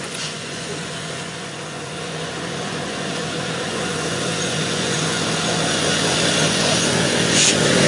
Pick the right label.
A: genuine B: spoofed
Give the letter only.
B